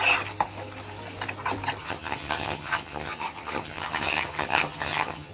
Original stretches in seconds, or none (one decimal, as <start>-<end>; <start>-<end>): 0.0-1.8